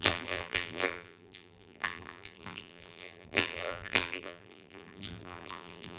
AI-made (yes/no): yes